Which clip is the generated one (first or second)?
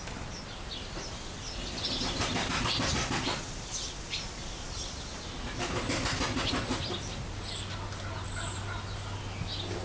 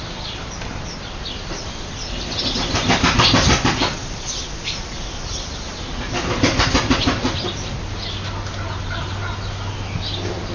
second